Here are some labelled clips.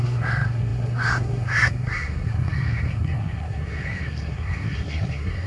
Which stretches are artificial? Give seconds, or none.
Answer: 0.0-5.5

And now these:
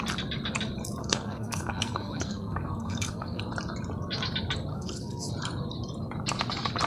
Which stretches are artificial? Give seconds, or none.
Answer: 1.0-3.4; 4.7-5.3